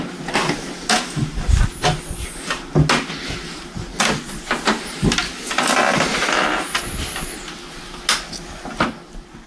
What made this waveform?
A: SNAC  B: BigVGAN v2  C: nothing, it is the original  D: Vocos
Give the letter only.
C